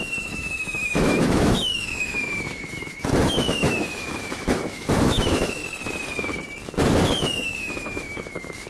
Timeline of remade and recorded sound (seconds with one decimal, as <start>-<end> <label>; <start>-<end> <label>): 0.0-5.6 remade; 5.6-7.2 recorded; 7.2-8.7 remade